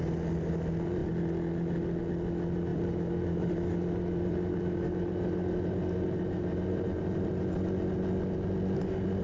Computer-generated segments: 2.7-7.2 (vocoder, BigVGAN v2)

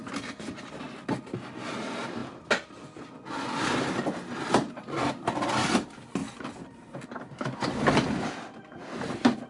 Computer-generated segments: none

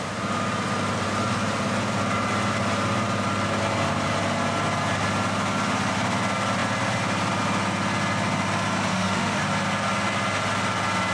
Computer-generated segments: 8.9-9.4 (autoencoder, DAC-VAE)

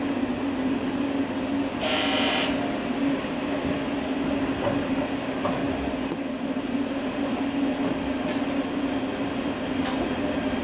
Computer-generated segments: none